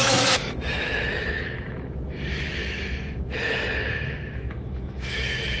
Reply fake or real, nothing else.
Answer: fake